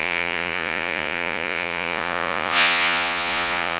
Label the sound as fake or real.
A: fake